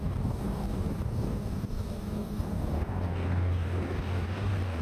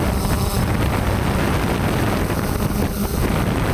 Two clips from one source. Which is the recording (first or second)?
second